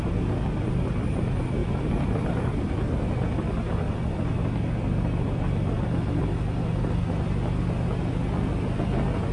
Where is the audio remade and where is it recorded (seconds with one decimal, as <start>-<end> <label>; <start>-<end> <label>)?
0.0-1.6 recorded; 1.6-2.7 remade; 2.7-9.3 recorded